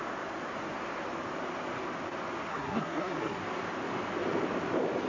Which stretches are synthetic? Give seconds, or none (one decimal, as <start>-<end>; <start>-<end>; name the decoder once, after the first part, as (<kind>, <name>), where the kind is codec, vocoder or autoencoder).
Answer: 2.5-3.4 (codec, SNAC)